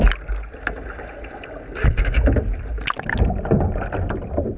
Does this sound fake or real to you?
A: real